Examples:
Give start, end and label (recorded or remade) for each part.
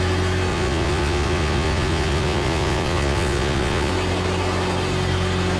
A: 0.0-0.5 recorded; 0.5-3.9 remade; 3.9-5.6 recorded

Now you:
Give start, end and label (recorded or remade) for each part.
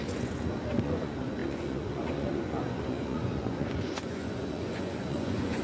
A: 0.0-5.6 remade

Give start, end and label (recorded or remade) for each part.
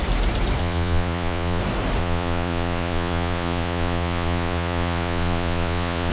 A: 0.0-0.6 recorded; 0.6-1.6 remade; 1.6-2.0 recorded; 2.0-6.1 remade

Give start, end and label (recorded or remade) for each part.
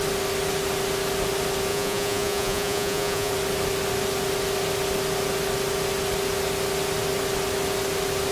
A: 0.0-1.7 recorded; 1.7-3.3 remade; 3.3-8.3 recorded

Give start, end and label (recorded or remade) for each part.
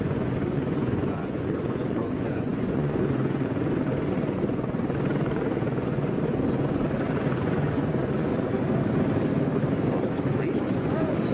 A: 0.0-8.3 remade; 8.3-10.6 recorded; 10.6-11.3 remade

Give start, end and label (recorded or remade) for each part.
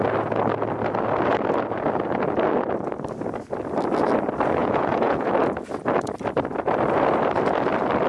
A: 0.0-4.6 recorded; 4.6-5.3 remade; 5.3-8.1 recorded